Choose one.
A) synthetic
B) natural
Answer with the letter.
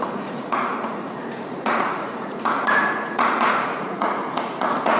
A